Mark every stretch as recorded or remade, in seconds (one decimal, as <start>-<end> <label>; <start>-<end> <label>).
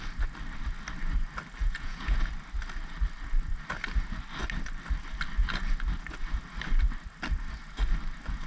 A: 0.0-1.6 recorded; 1.6-2.2 remade; 2.2-8.5 recorded